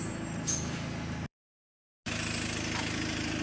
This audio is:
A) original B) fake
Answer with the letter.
A